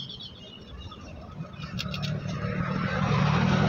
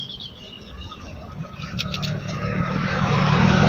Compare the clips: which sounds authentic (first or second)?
first